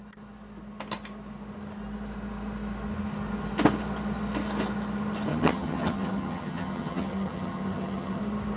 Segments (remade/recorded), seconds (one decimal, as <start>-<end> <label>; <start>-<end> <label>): 0.0-5.3 recorded; 5.3-8.2 remade; 8.2-8.6 recorded